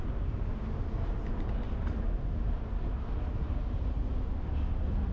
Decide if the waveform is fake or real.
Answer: real